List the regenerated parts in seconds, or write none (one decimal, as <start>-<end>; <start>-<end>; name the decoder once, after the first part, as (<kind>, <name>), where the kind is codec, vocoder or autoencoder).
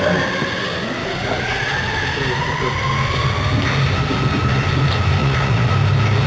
1.0-1.7 (vocoder, Vocos); 5.2-5.7